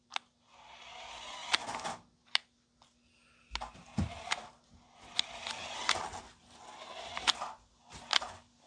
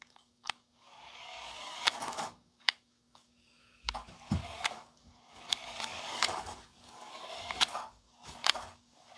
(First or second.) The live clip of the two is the first